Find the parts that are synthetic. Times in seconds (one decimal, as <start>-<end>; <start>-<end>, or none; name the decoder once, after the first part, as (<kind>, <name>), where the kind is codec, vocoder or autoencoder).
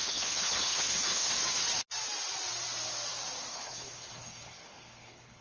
0.0-1.3 (codec, HILCodec); 3.5-5.4